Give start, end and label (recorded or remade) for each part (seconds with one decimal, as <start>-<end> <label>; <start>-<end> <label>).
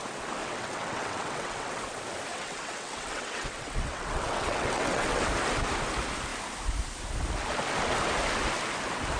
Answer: 0.0-0.4 recorded; 0.4-1.8 remade; 1.8-2.3 recorded; 2.3-5.2 remade; 5.2-9.2 recorded